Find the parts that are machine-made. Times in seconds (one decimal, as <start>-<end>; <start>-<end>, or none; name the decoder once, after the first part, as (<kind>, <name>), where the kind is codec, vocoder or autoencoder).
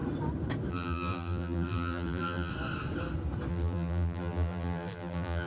0.7-2.5 (vocoder, BigVGAN v2); 3.5-5.5